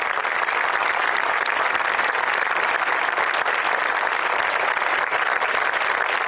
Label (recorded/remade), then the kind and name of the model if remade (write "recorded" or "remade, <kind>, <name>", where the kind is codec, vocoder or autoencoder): recorded